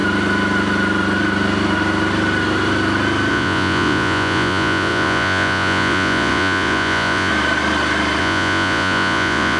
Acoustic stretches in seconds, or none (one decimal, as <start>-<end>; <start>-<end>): 0.0-3.3; 7.3-8.2